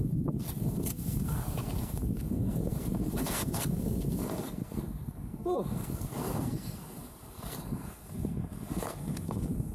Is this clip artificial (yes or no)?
yes